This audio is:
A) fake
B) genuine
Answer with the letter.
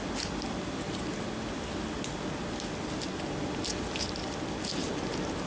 B